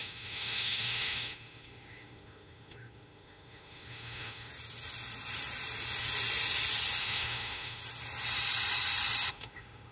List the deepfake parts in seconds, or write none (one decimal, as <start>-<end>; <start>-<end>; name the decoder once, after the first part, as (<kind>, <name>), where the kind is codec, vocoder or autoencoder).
0.0-4.5 (autoencoder, DAC-VAE); 7.0-7.8; 9.3-9.9